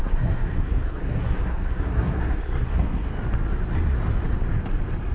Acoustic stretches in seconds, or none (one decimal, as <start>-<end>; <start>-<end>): 3.1-5.1